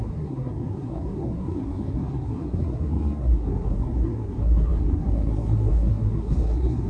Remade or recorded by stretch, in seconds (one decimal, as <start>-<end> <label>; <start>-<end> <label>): 0.0-6.9 remade